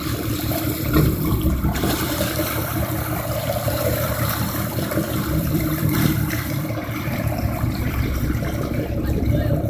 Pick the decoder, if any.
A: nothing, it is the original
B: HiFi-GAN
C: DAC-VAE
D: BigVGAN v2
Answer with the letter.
D